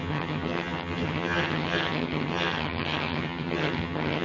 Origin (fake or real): fake